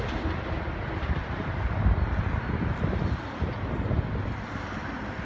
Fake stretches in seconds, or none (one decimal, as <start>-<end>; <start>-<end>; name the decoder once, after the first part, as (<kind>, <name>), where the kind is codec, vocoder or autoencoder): none

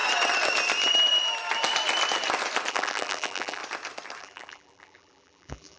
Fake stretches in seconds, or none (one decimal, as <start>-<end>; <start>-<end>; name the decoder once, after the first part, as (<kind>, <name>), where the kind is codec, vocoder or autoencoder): 2.7-3.6 (vocoder, BigVGAN v2); 4.2-5.8

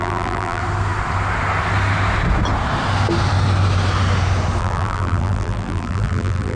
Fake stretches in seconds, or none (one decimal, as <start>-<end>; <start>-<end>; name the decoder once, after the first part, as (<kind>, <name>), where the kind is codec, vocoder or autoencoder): 0.0-0.6 (vocoder, BigVGAN v2); 4.6-6.6

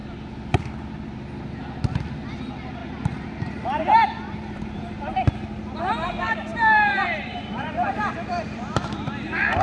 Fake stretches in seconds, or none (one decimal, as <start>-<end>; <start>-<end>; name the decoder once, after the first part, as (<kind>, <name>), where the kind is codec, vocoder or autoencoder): 2.8-5.0 (vocoder, BigVGAN v2); 6.5-9.6

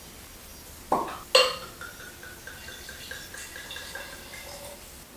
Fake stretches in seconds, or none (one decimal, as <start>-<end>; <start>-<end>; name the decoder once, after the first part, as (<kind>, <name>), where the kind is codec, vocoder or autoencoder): none

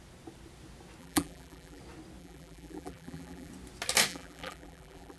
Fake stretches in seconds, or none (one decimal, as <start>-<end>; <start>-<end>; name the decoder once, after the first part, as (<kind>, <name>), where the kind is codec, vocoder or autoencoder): 1.0-1.8 (vocoder, BigVGAN v2); 2.2-3.5; 4.1-5.2

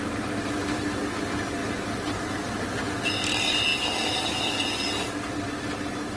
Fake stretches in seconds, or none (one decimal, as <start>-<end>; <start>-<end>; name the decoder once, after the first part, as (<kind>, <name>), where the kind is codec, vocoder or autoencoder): 0.0-0.8 (vocoder, BigVGAN v2); 1.6-3.1